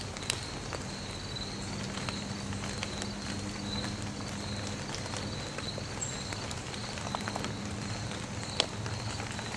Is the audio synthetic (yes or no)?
no